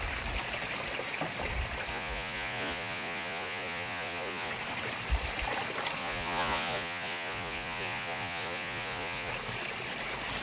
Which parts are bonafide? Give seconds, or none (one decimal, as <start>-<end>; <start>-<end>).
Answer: 0.0-1.9; 4.5-6.0; 9.3-10.4